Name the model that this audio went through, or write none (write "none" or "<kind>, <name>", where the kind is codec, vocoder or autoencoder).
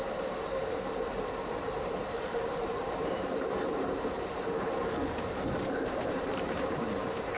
vocoder, BigVGAN v2